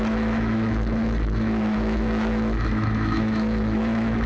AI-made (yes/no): yes